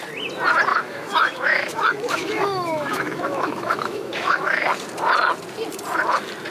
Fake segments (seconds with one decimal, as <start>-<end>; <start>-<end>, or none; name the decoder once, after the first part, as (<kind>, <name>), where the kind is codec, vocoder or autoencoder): 0.7-4.6 (autoencoder, DAC-VAE)